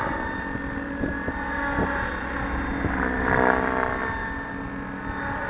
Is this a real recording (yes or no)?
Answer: yes